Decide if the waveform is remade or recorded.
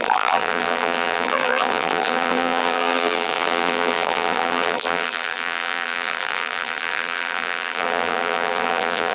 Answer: remade